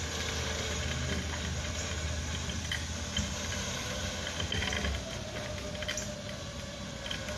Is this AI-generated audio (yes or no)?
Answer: no